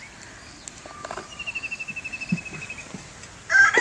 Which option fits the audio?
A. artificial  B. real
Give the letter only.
B